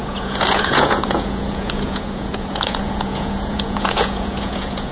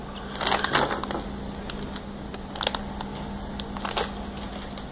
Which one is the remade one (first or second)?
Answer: first